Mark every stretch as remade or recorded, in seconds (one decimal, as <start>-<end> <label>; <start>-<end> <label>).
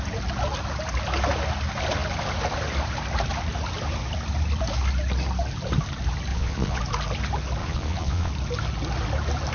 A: 0.0-6.3 recorded; 6.3-6.8 remade; 6.8-7.6 recorded; 7.6-8.3 remade; 8.3-9.5 recorded